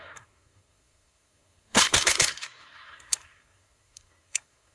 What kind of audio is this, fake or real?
fake